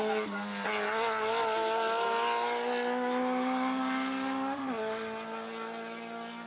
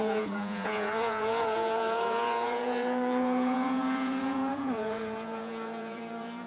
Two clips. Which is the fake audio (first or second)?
second